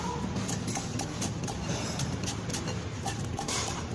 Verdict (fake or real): real